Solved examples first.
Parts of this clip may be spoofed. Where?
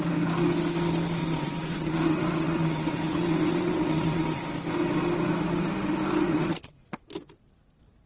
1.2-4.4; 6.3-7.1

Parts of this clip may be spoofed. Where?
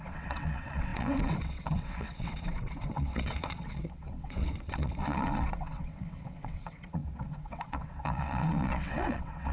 0.0-9.5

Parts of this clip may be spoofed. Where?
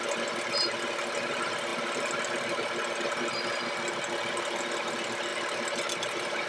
none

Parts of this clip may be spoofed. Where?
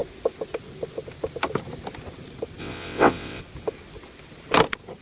2.6-3.4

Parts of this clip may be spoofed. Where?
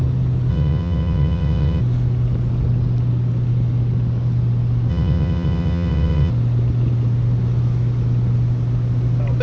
0.5-1.8; 4.9-6.3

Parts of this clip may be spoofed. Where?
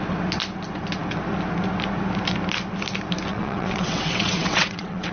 3.3-5.1